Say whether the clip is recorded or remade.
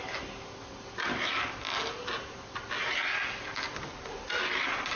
recorded